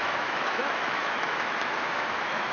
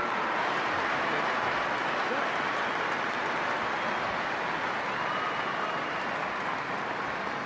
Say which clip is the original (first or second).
second